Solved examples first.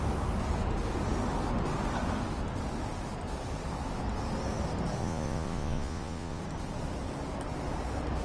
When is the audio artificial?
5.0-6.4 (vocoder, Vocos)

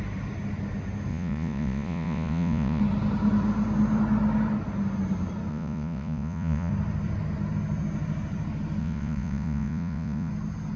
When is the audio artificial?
1.1-2.8 (vocoder, Vocos); 5.5-6.7; 8.8-10.3

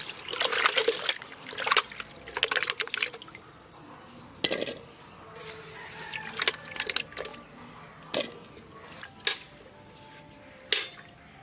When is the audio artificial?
none

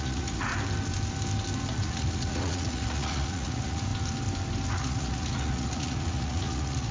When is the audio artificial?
0.0-0.5 (vocoder, Vocos); 1.7-3.9; 4.7-6.9

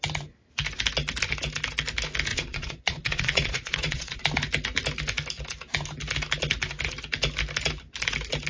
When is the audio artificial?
2.3-4.2 (vocoder, Vocos)